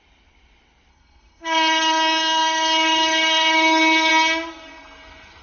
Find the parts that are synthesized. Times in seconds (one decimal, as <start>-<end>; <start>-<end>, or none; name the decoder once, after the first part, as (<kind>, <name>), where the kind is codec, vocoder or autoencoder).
0.9-4.1 (codec, SNAC)